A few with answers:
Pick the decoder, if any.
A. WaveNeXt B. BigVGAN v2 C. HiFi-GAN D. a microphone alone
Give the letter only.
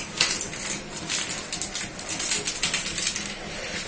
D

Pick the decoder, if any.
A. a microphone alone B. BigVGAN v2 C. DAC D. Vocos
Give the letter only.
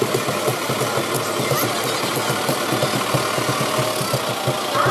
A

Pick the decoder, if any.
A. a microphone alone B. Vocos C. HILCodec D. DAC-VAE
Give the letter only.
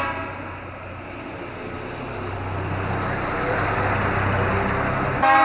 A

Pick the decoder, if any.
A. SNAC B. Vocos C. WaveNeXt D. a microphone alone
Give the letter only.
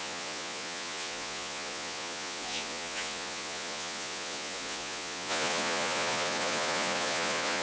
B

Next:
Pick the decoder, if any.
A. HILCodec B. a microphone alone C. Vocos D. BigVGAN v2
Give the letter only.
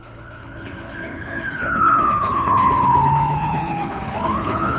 A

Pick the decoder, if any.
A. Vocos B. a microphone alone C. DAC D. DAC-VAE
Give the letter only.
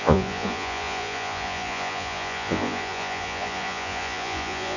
A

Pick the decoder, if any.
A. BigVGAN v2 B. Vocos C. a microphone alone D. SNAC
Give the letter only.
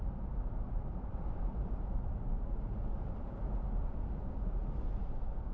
C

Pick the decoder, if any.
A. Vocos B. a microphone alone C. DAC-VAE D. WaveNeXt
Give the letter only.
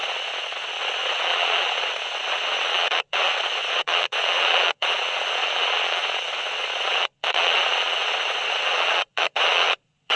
A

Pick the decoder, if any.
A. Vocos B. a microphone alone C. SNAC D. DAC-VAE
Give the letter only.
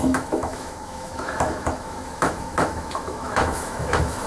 D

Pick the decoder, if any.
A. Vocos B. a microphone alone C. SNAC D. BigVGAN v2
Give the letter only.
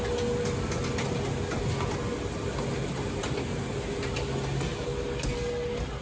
B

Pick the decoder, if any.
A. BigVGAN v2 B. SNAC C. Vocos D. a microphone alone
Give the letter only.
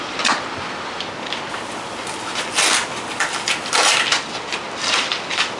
D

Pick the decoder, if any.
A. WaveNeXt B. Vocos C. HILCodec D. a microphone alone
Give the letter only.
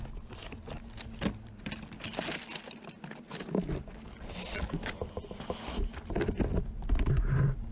D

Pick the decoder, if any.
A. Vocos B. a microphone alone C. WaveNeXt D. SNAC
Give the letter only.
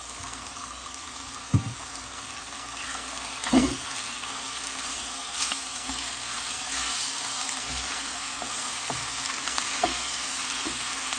D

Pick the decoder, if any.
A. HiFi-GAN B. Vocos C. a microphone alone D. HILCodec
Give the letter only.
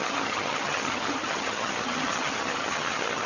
A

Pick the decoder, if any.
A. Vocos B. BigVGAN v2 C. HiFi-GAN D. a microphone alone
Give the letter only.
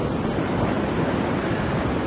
D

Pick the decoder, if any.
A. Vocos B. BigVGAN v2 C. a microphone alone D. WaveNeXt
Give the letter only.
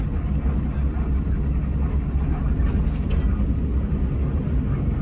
C